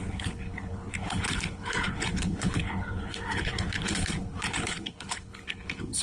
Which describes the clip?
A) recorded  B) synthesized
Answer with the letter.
B